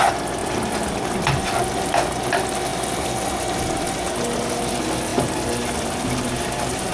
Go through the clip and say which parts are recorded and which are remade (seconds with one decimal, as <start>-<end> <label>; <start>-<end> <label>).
0.0-0.4 recorded; 0.4-1.9 remade; 1.9-5.1 recorded; 5.1-6.9 remade